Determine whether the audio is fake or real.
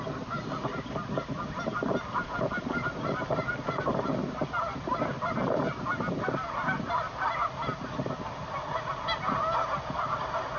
real